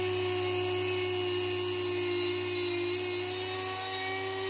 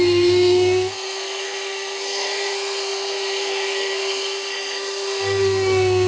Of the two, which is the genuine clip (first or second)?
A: first